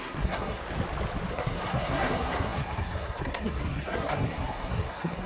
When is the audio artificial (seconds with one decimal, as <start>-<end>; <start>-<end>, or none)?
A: 0.0-0.6; 1.3-5.3